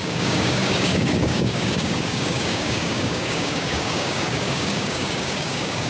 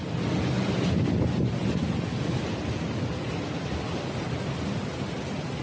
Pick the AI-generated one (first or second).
first